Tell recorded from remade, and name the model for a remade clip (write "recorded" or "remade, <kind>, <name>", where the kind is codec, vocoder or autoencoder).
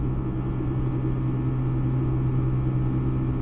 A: recorded